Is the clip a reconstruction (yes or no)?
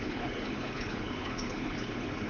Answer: yes